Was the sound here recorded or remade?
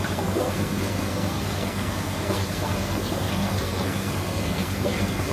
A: remade